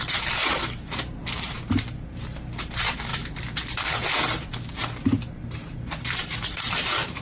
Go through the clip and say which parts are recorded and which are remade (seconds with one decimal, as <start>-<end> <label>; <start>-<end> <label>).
0.0-7.2 remade